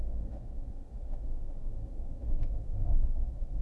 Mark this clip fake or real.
fake